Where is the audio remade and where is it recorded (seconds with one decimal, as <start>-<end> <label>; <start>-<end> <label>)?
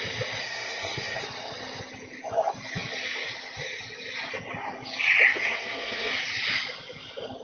0.0-0.4 recorded; 0.4-1.2 remade; 1.2-5.4 recorded; 5.4-6.1 remade; 6.1-7.4 recorded